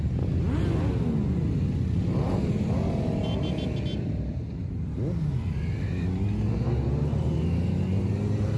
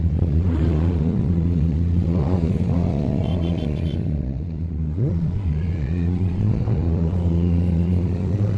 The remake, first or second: second